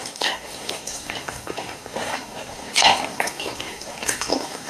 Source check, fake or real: fake